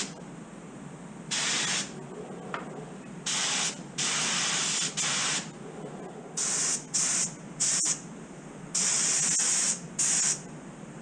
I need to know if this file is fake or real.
real